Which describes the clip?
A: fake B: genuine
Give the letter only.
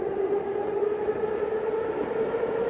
B